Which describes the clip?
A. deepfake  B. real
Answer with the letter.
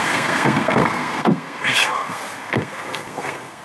A